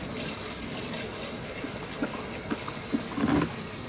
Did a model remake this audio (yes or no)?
no